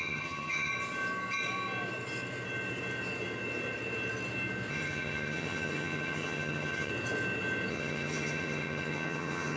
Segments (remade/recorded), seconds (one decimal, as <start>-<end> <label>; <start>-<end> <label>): 0.0-0.7 remade; 0.7-4.7 recorded; 4.7-6.9 remade; 6.9-7.7 recorded; 7.7-9.6 remade